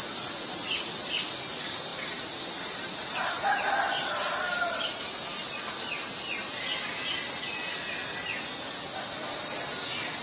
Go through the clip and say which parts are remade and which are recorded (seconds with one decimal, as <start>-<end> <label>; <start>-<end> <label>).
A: 0.0-1.9 recorded; 1.9-5.0 remade; 5.0-10.2 recorded